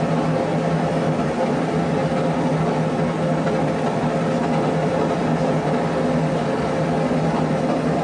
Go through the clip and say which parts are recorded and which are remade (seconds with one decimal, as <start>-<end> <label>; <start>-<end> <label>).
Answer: 0.0-8.0 recorded